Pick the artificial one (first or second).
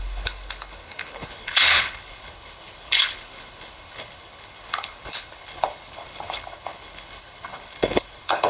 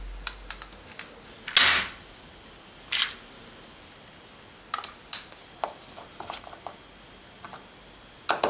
first